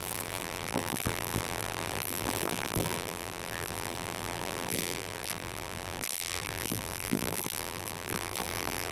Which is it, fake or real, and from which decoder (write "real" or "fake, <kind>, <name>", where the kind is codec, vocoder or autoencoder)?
fake, vocoder, BigVGAN v2